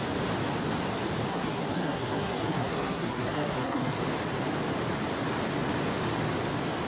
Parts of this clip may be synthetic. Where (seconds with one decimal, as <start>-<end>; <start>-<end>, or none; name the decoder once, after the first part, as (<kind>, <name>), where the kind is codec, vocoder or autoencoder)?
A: 1.3-4.0 (codec, SNAC)